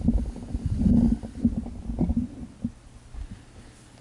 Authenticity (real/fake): real